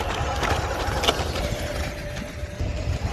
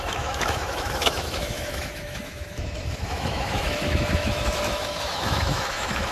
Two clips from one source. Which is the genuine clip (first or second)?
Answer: first